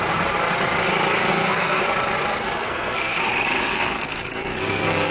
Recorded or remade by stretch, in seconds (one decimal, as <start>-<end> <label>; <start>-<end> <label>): 0.0-1.3 recorded; 1.3-1.8 remade; 1.8-2.4 recorded; 2.4-3.2 remade; 3.2-3.7 recorded; 3.7-5.1 remade